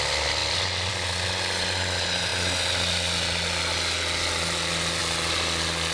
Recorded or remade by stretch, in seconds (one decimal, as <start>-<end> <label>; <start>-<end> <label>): 0.0-5.9 recorded

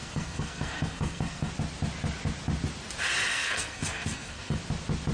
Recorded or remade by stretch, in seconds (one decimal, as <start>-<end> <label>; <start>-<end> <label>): 0.0-1.5 remade; 1.5-3.3 recorded; 3.3-4.6 remade; 4.6-5.1 recorded

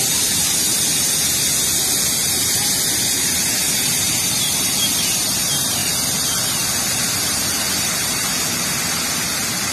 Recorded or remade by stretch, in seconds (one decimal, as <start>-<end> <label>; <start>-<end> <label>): 0.0-9.7 recorded

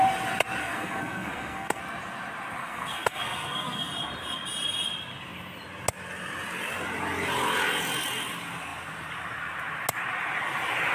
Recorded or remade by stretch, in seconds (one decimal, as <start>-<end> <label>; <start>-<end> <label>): 0.0-0.6 recorded; 0.6-1.8 remade; 1.8-2.6 recorded; 2.6-3.9 remade; 3.9-10.9 recorded

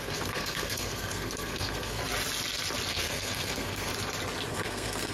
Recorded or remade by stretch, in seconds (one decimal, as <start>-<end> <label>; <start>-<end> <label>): 0.0-2.0 remade; 2.0-2.9 recorded; 2.9-3.9 remade; 3.9-4.5 recorded; 4.5-5.1 remade

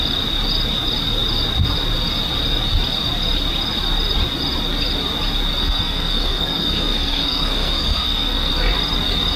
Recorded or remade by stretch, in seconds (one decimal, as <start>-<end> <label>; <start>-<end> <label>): 0.0-5.6 recorded; 5.6-8.5 remade; 8.5-9.4 recorded